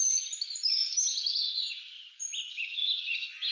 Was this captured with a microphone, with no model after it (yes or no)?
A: yes